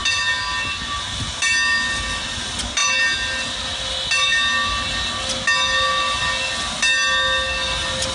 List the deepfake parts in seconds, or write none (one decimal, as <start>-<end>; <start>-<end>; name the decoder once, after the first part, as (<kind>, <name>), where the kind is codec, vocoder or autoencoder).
none